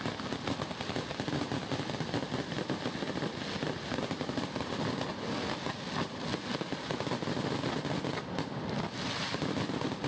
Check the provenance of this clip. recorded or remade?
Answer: recorded